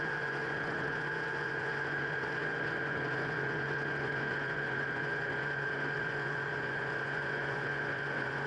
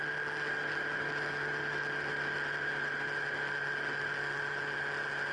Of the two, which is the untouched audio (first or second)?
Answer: second